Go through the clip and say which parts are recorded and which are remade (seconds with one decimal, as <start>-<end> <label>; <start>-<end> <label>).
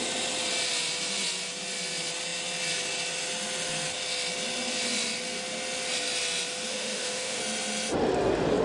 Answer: 0.0-6.7 recorded; 6.7-7.4 remade; 7.4-8.6 recorded